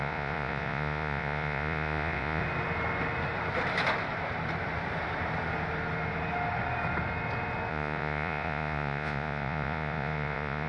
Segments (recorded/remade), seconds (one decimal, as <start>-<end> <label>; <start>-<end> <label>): 0.0-2.4 remade; 2.4-7.7 recorded; 7.7-10.7 remade

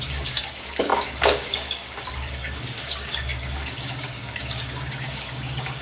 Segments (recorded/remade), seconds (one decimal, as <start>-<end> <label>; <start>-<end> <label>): 0.0-5.8 remade

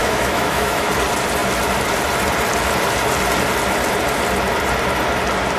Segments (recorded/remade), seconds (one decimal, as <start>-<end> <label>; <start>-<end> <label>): 0.0-0.9 remade; 0.9-5.6 recorded

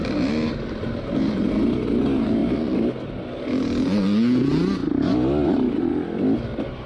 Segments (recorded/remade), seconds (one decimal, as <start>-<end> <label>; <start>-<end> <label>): 0.0-1.5 remade; 1.5-6.9 recorded

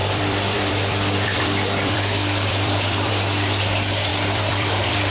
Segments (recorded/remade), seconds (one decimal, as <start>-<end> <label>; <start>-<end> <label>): 0.0-3.1 remade; 3.1-4.1 recorded; 4.1-5.1 remade

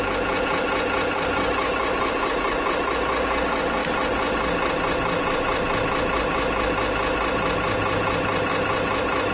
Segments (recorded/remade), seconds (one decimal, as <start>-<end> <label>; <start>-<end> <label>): 0.0-9.3 recorded

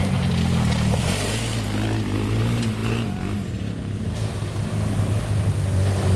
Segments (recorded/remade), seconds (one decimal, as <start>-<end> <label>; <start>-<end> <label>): 0.0-6.2 recorded

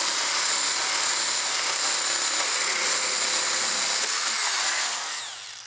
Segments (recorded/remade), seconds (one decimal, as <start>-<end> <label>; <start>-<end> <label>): 0.0-4.6 recorded; 4.6-5.2 remade; 5.2-5.7 recorded